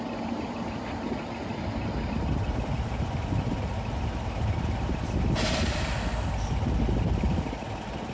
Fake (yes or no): no